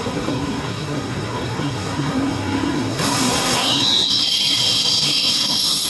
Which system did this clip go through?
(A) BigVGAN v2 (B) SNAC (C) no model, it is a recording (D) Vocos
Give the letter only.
B